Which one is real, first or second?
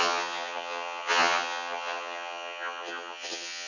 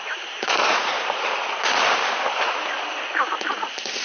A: second